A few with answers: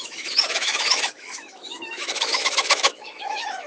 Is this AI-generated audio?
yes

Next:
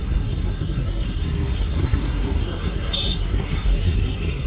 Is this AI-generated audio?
yes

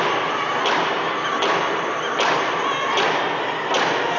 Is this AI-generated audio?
no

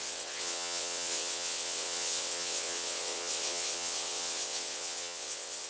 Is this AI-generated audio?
yes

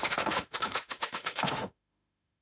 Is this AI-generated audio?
yes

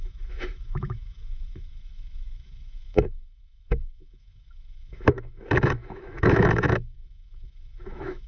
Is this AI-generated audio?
yes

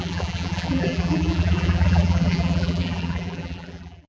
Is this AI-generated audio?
yes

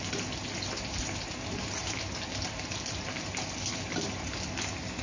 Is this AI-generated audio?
no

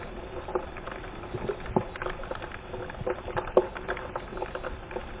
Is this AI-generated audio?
no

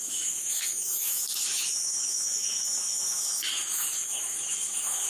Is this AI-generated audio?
yes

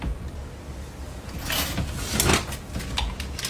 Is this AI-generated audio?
no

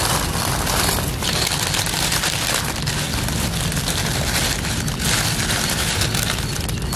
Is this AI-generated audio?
no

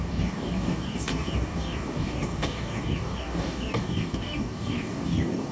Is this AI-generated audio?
yes